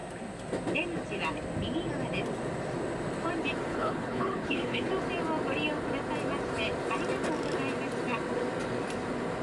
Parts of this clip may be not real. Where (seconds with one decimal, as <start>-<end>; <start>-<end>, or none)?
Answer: 3.7-4.9